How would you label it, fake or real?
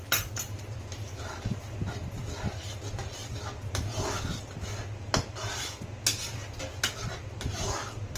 real